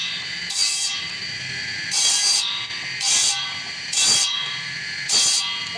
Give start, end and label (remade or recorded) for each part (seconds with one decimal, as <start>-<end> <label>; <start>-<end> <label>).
0.0-5.8 recorded